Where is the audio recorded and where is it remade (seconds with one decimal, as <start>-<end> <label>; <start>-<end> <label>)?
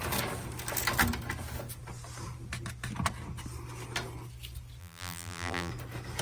0.0-4.8 recorded; 4.8-5.7 remade; 5.7-6.2 recorded